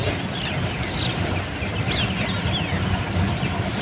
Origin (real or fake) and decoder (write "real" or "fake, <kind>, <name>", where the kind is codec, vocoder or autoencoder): real